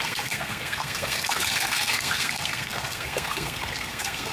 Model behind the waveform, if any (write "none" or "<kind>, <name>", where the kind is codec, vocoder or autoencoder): codec, SNAC